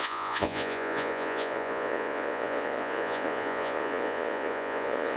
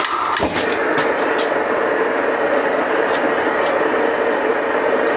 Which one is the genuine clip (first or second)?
second